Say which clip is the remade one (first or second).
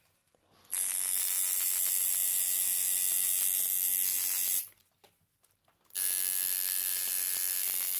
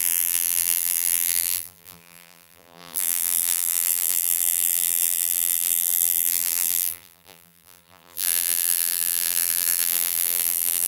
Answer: second